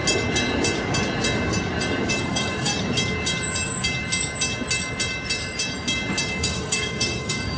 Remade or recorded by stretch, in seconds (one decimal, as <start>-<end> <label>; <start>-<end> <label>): 0.0-2.1 recorded; 2.1-2.7 remade; 2.7-6.3 recorded; 6.3-7.6 remade